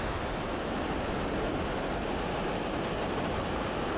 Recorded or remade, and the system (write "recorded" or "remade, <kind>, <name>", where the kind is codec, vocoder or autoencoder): recorded